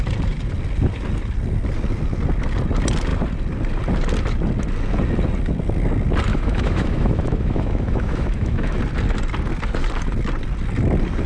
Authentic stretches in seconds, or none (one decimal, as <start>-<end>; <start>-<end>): 0.0-6.3; 8.8-11.3